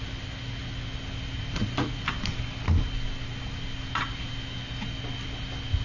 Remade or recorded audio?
recorded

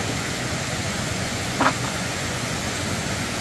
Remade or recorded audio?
remade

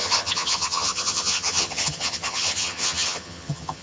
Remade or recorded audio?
remade